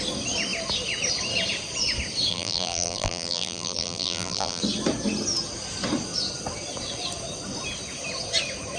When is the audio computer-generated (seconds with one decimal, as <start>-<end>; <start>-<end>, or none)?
2.3-4.6